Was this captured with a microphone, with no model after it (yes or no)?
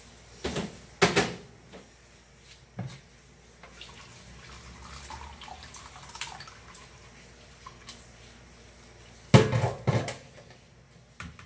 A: yes